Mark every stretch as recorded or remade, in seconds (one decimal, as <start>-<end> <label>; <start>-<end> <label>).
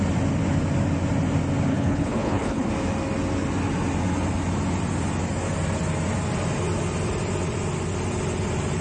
0.0-1.7 recorded; 1.7-2.7 remade; 2.7-8.8 recorded